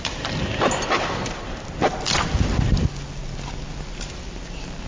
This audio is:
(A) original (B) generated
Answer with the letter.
A